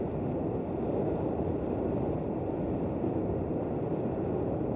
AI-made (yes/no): no